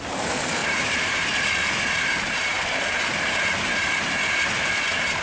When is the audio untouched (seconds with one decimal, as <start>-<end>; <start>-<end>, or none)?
none